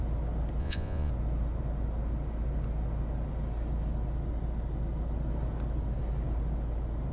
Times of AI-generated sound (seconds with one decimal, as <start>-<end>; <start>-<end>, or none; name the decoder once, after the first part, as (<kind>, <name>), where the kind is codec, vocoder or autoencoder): 0.6-1.1 (vocoder, Vocos)